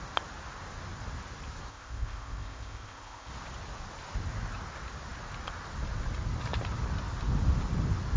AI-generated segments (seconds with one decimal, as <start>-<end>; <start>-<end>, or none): 1.7-3.3